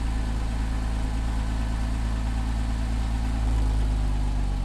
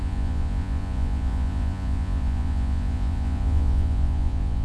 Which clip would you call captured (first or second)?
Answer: first